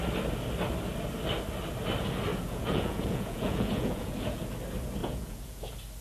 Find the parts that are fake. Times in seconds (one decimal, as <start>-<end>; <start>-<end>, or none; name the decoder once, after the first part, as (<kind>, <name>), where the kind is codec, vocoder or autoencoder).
2.3-4.4 (vocoder, Vocos); 5.0-5.6